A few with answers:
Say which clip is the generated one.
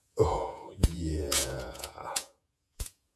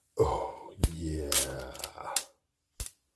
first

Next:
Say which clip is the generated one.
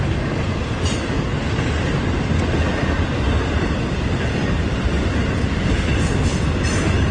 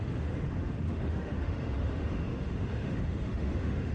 second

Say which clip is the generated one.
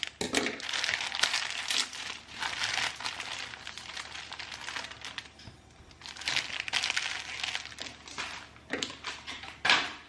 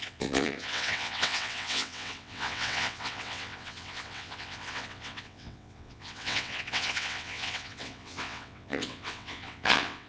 second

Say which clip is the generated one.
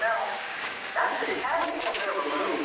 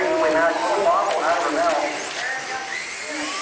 first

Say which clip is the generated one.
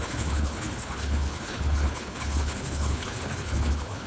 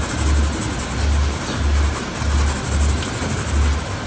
first